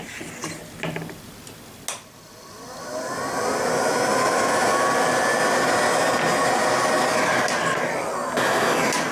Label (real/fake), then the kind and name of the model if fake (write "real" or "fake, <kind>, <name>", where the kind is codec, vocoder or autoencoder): real